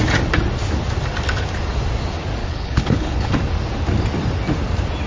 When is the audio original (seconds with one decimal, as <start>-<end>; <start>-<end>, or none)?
0.0-2.4; 3.3-5.1